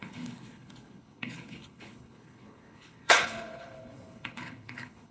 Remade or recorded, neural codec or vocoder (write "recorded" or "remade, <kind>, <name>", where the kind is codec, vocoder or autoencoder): remade, codec, HILCodec